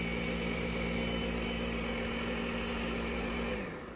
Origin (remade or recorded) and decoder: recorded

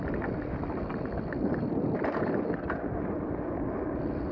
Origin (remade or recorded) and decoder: recorded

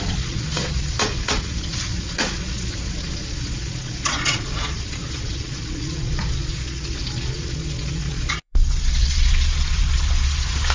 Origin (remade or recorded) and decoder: remade, vocoder, Vocos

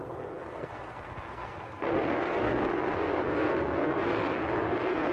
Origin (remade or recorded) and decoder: remade, codec, SNAC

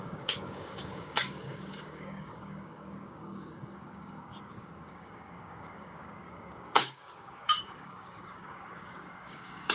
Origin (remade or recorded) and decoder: remade, codec, DAC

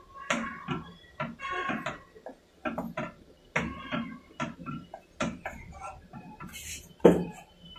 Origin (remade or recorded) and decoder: recorded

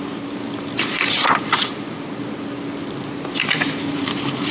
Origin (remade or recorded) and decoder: remade, vocoder, BigVGAN v2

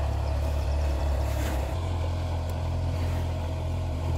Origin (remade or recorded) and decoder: remade, vocoder, BigVGAN v2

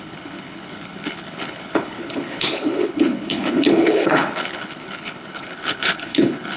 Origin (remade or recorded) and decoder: remade, codec, HILCodec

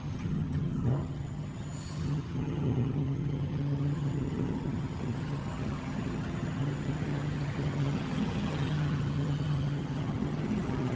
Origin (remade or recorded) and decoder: remade, vocoder, HiFi-GAN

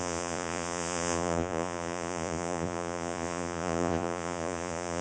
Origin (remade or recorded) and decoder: remade, vocoder, Vocos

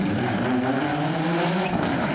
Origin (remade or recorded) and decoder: recorded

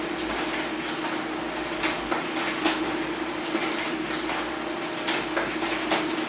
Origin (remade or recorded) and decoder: recorded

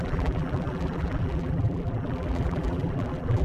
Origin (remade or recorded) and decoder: remade, vocoder, BigVGAN v2